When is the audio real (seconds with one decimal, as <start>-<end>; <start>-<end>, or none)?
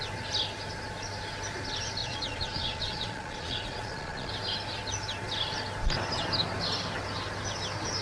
0.0-2.0; 4.3-8.0